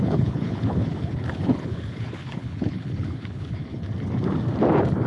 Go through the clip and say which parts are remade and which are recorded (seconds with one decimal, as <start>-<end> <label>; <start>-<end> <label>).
0.0-3.8 remade; 3.8-5.1 recorded